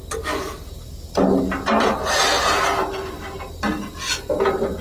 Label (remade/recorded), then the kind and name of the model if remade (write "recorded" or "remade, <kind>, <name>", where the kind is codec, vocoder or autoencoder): recorded